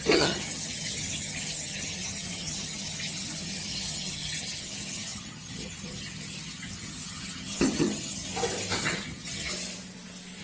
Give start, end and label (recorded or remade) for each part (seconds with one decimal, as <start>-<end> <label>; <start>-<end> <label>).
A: 0.0-8.3 remade; 8.3-8.8 recorded; 8.8-9.5 remade; 9.5-10.4 recorded